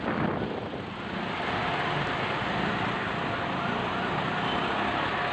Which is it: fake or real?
real